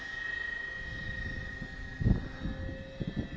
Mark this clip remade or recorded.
recorded